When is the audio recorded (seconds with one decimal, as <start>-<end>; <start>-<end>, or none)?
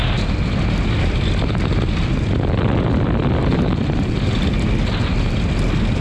0.0-3.4; 4.1-6.0